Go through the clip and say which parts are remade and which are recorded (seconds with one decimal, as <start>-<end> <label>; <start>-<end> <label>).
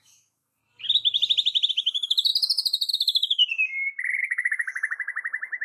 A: 0.0-0.6 remade; 0.6-1.7 recorded; 1.7-2.3 remade; 2.3-2.9 recorded; 2.9-3.4 remade; 3.4-4.2 recorded; 4.2-5.6 remade